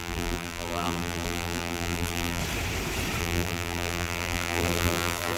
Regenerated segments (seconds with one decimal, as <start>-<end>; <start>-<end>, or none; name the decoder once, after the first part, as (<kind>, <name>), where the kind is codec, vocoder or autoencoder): 0.0-2.4 (vocoder, BigVGAN v2); 3.2-5.4